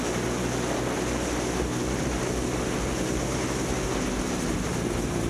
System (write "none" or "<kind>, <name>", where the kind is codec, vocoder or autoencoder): none